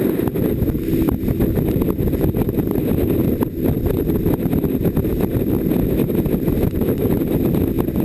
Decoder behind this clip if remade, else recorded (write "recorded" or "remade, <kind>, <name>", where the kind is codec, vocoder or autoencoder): recorded